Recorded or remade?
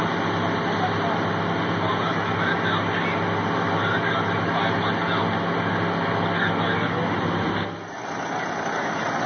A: recorded